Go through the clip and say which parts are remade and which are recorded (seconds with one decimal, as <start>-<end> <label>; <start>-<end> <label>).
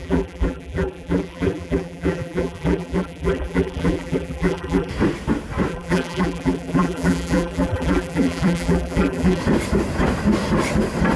0.0-4.9 remade; 4.9-5.7 recorded; 5.7-9.4 remade; 9.4-11.2 recorded